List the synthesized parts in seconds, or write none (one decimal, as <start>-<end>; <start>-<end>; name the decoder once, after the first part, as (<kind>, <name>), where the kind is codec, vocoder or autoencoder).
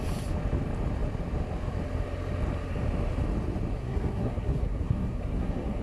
3.8-5.8 (codec, SNAC)